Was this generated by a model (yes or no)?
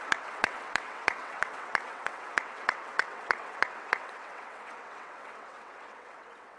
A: yes